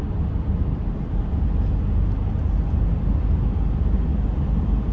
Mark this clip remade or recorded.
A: recorded